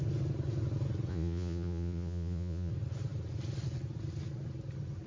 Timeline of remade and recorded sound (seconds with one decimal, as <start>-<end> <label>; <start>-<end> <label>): 0.0-1.1 recorded; 1.1-2.7 remade; 2.7-5.1 recorded